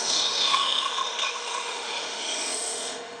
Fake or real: fake